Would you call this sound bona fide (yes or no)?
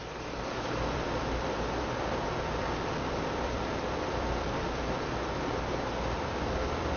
no